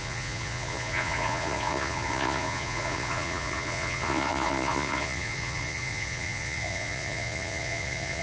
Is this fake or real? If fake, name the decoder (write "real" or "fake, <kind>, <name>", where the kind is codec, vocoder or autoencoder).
fake, vocoder, Vocos